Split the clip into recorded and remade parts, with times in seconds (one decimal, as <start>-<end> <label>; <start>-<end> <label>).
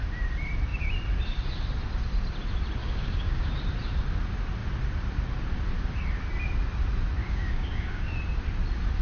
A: 0.0-2.8 recorded; 2.8-3.5 remade; 3.5-7.2 recorded; 7.2-8.2 remade; 8.2-9.0 recorded